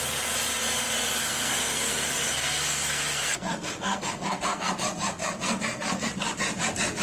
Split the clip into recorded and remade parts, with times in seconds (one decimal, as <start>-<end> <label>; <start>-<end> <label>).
0.0-1.2 recorded; 1.2-4.7 remade; 4.7-5.2 recorded; 5.2-6.1 remade; 6.1-7.0 recorded